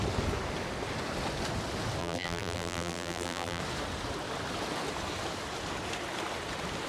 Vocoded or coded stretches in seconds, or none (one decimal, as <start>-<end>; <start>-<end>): 2.0-3.6